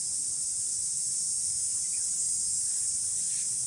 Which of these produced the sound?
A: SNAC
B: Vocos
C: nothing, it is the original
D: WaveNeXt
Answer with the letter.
C